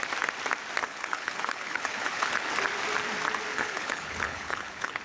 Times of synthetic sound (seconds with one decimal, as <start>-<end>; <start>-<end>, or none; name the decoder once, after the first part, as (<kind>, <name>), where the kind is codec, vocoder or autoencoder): 0.8-2.5 (codec, HILCodec); 3.5-5.0